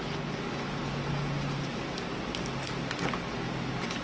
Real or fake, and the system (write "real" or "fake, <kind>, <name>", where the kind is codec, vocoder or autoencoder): real